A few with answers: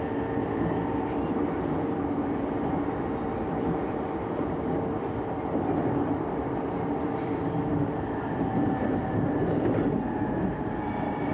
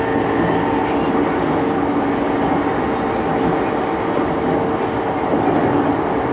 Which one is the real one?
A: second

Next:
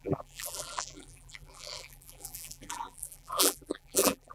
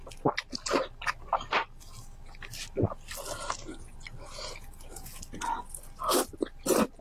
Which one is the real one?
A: second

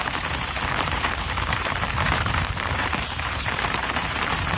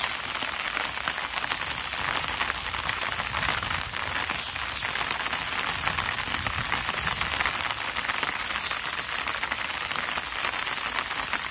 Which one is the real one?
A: second